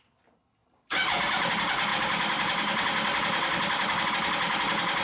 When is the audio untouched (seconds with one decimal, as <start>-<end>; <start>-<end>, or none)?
0.0-0.6; 1.5-1.9; 4.1-5.0